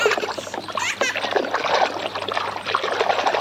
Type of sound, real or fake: real